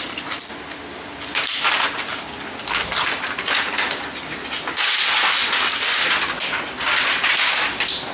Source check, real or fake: real